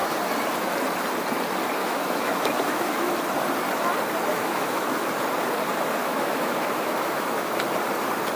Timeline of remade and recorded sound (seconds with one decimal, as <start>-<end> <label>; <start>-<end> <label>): 0.0-1.8 recorded; 1.8-3.1 remade; 3.1-4.3 recorded; 4.3-5.0 remade; 5.0-6.0 recorded; 6.0-7.5 remade; 7.5-8.4 recorded